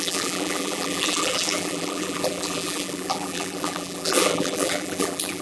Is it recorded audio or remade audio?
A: remade